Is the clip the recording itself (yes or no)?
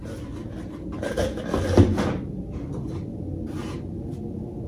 yes